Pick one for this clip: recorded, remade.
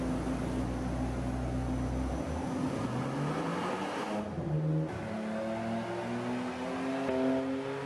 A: recorded